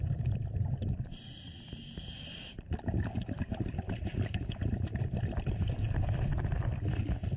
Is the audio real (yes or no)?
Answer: yes